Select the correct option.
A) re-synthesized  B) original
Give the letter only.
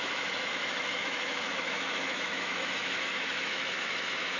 A